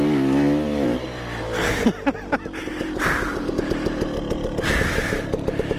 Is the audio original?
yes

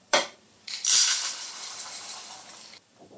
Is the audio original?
no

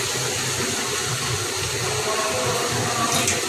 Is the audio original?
yes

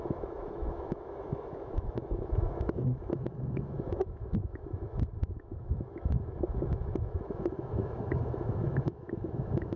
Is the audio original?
no